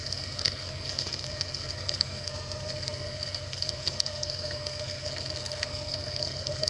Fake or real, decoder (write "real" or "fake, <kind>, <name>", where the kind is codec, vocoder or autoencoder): fake, codec, SNAC